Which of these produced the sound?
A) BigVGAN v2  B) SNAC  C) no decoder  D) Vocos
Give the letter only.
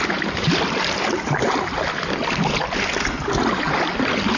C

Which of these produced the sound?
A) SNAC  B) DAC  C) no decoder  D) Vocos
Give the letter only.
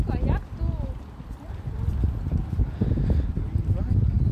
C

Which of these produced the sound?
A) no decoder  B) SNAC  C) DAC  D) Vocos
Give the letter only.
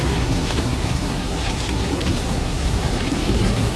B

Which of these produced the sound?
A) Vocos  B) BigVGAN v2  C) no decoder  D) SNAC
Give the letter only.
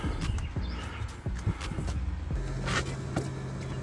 C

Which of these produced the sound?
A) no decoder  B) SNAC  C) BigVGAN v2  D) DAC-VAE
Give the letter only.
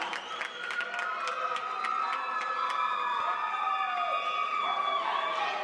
A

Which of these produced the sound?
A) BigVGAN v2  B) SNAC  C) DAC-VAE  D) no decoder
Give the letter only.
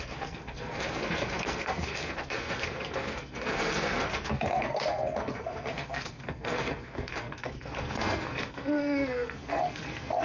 B